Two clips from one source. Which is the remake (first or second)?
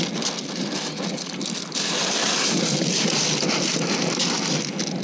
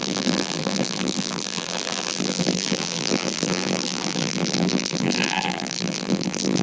second